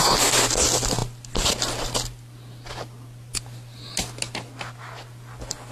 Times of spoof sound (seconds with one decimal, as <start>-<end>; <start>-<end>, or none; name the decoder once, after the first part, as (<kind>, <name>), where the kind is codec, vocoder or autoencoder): none